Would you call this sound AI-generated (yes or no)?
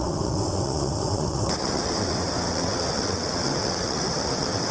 yes